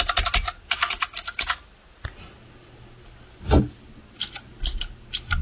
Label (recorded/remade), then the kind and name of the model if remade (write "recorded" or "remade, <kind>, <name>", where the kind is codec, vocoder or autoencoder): recorded